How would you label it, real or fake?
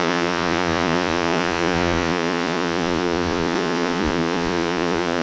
fake